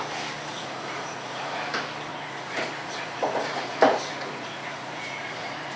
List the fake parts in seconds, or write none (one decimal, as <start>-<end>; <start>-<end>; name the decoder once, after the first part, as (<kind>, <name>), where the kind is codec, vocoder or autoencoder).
0.5-1.6 (vocoder, Vocos); 2.1-5.8